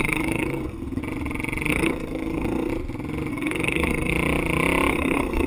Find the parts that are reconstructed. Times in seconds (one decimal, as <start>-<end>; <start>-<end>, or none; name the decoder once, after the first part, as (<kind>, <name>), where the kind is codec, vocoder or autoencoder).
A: 0.0-1.0 (codec, SNAC); 1.7-2.7; 3.3-4.1; 4.9-5.5